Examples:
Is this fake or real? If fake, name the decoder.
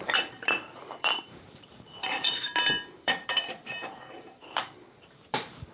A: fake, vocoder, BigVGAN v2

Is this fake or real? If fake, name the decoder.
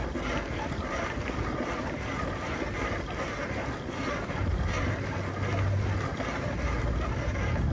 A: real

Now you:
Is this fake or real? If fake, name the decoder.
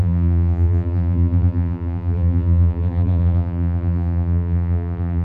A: fake, vocoder, BigVGAN v2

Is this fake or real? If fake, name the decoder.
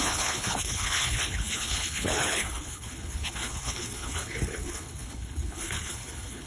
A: fake, codec, HILCodec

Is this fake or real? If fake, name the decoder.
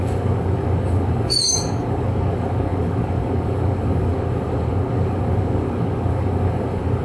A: fake, codec, DAC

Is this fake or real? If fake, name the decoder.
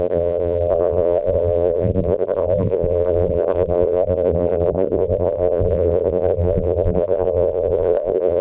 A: fake, vocoder, BigVGAN v2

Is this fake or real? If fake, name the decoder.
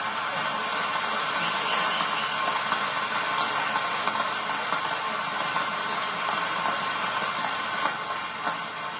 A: real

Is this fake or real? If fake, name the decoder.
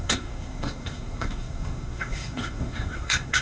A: fake, codec, SNAC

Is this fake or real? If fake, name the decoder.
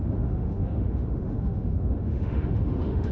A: fake, autoencoder, DAC-VAE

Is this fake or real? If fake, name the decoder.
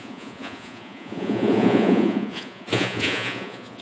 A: fake, vocoder, Vocos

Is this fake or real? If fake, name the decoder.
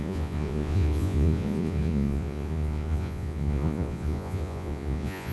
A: fake, vocoder, Vocos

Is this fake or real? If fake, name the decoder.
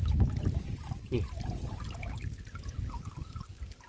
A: real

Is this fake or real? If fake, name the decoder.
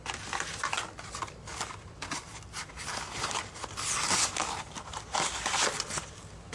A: real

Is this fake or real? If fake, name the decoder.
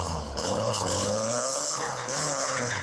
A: fake, codec, HILCodec